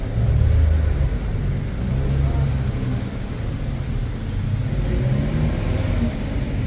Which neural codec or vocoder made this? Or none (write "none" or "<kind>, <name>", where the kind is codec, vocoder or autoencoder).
none